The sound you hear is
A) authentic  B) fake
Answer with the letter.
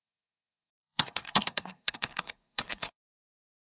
B